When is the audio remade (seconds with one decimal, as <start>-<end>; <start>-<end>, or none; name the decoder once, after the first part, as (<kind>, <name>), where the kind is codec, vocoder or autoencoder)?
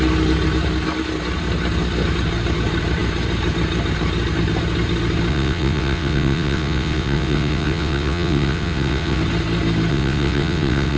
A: 5.3-9.2 (vocoder, WaveNeXt); 9.9-11.0